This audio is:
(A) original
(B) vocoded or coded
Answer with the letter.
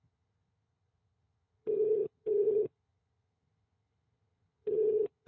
B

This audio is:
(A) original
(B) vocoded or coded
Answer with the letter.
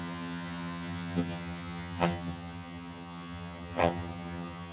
B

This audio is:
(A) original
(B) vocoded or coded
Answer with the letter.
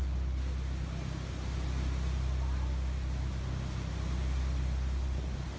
A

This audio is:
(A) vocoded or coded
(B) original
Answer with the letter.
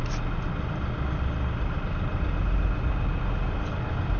B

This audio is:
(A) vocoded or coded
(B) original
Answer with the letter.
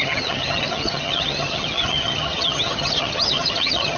A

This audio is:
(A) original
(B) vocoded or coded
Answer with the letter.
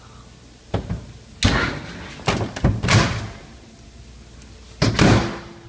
A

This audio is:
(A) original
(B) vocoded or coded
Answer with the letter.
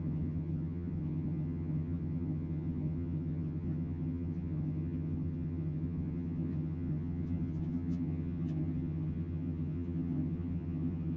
B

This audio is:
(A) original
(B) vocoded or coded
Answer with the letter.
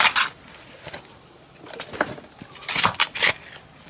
A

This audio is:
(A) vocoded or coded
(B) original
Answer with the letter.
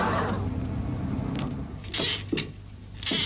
B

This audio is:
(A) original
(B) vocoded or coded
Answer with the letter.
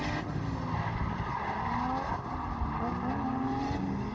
A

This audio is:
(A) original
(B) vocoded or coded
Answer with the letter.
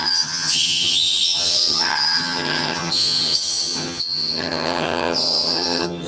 B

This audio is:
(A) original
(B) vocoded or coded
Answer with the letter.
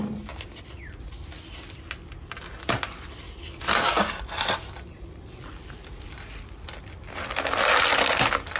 A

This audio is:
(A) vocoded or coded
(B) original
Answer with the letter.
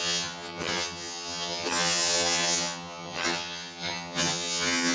A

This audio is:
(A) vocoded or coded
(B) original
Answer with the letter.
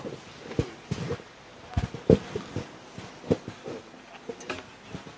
B